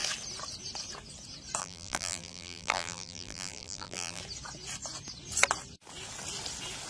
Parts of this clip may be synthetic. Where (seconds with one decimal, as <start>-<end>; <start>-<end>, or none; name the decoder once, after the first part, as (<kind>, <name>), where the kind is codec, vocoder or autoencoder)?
1.6-4.2 (vocoder, BigVGAN v2)